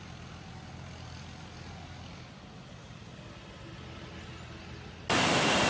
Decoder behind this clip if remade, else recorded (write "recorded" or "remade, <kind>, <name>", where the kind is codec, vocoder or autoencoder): recorded